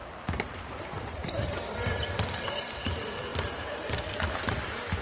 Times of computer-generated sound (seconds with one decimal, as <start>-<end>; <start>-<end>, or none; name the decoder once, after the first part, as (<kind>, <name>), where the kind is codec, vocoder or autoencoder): 0.0-2.6 (vocoder, BigVGAN v2)